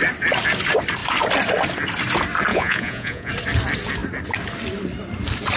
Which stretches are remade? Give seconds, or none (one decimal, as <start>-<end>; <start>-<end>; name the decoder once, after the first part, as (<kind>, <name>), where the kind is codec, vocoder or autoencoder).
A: 2.5-3.3 (vocoder, Vocos)